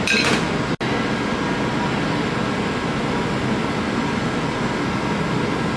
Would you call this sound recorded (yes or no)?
yes